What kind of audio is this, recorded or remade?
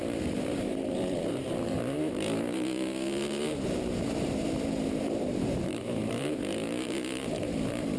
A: remade